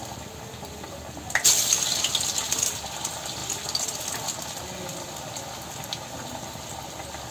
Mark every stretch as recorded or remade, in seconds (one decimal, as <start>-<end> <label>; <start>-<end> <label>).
0.0-7.3 recorded